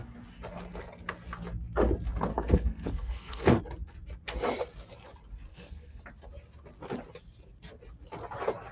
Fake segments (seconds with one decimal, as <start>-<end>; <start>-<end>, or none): 2.3-3.6; 5.5-6.0